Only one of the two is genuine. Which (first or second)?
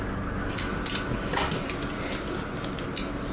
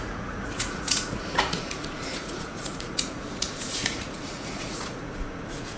first